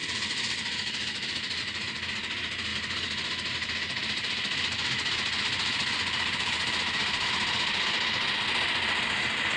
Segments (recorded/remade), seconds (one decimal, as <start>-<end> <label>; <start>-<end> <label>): 0.0-9.6 recorded